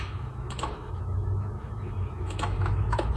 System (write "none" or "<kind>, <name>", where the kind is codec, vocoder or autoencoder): autoencoder, DAC-VAE